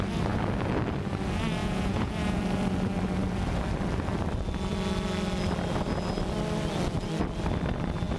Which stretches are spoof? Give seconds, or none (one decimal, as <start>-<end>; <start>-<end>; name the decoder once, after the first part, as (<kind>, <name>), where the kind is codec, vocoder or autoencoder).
1.6-2.4 (vocoder, Vocos)